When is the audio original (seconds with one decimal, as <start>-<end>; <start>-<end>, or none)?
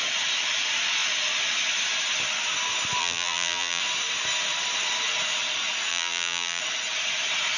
0.0-3.0; 3.8-5.9; 6.6-7.6